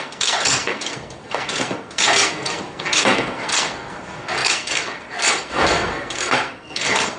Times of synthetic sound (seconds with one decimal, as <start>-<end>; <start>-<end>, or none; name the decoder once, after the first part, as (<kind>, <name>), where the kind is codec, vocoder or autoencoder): 0.0-7.2 (codec, SNAC)